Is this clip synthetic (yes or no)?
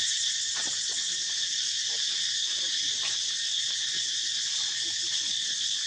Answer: no